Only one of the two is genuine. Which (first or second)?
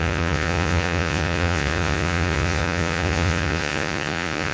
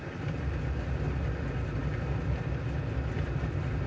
second